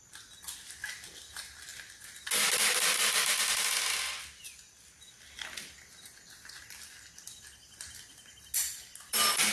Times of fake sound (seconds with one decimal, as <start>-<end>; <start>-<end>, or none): none